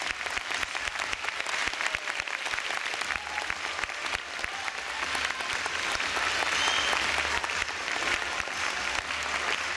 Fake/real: real